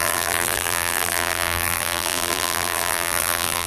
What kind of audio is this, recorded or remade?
remade